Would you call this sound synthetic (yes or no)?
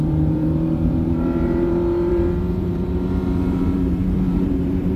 yes